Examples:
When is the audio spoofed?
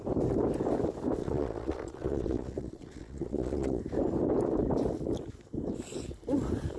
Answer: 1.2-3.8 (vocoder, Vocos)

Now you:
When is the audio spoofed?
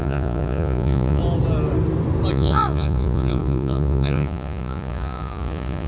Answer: 0.0-1.2 (vocoder, Vocos); 2.3-5.9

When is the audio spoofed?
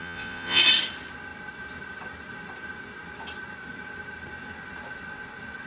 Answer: 0.0-0.6 (vocoder, Vocos)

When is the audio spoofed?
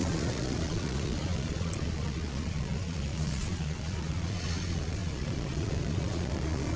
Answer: 0.0-6.8 (vocoder, Vocos)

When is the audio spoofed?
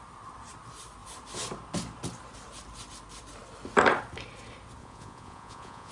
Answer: 4.8-5.9 (vocoder, Vocos)